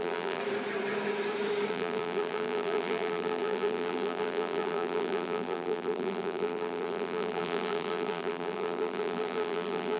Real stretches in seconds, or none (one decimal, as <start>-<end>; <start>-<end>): 0.4-1.7